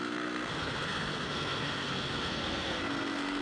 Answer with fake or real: fake